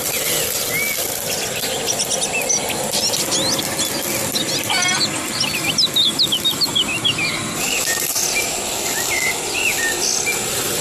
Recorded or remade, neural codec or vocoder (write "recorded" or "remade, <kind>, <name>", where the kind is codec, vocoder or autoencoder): recorded